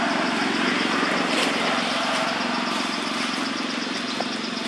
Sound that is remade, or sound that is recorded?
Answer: recorded